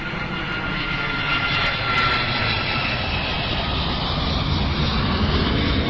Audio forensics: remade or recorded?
recorded